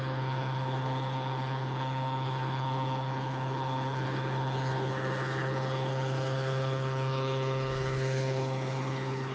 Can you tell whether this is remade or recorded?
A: remade